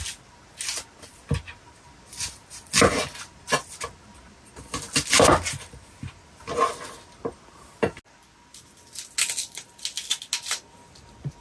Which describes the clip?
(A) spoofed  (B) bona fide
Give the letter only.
B